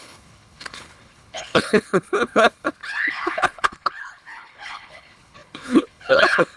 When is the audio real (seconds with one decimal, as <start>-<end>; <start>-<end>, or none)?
none